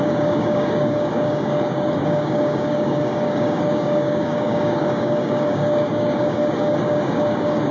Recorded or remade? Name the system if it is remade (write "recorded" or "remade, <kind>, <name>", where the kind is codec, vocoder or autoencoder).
remade, codec, DAC